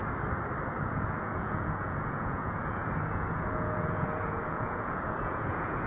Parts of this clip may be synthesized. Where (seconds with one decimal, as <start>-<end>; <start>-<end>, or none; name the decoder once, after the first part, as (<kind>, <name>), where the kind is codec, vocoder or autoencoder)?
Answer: 0.9-5.9 (vocoder, Vocos)